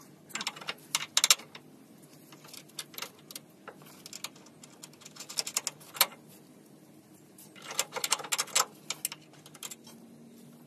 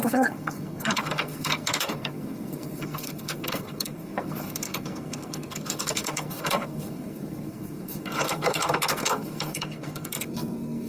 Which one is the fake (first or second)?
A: second